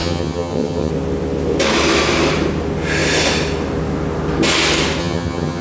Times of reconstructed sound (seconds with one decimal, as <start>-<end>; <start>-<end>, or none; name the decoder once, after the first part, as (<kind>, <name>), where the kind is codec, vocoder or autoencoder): 0.0-0.9 (vocoder, HiFi-GAN); 5.0-5.6